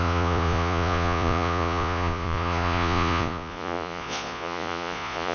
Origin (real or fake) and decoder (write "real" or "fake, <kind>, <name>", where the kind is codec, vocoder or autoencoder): fake, vocoder, Vocos